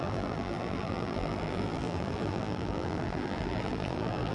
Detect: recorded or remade remade